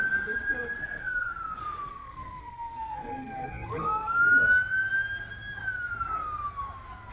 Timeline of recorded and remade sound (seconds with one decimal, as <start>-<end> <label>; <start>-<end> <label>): 0.0-0.8 recorded; 0.8-1.3 remade; 1.3-1.9 recorded; 1.9-4.2 remade; 4.2-7.1 recorded